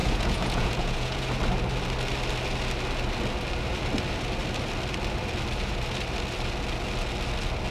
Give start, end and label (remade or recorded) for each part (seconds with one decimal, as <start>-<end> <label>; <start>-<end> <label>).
0.0-1.3 remade; 1.3-7.7 recorded